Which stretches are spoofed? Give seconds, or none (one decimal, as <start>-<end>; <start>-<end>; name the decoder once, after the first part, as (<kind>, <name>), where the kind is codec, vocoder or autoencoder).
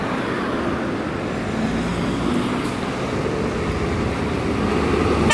none